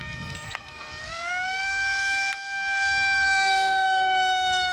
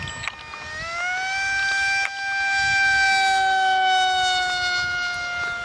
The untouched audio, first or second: second